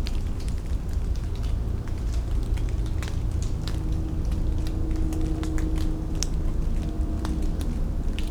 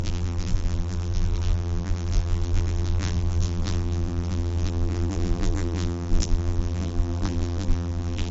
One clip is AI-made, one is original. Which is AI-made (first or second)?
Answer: second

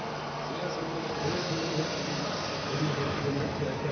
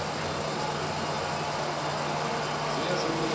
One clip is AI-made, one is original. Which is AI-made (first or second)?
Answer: first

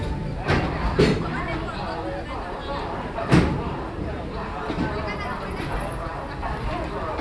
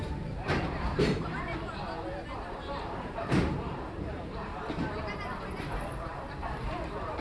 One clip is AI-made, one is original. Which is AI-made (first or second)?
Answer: second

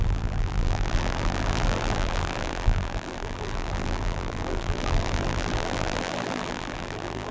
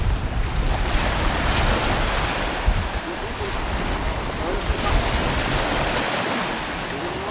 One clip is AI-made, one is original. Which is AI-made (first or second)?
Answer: first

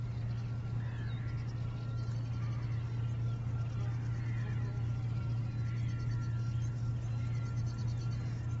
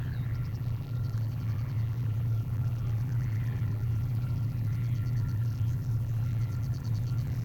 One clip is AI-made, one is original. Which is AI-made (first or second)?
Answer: second